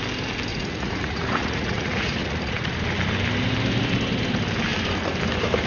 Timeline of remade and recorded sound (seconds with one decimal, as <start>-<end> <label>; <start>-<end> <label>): 0.0-0.5 recorded; 0.5-2.7 remade; 2.7-5.7 recorded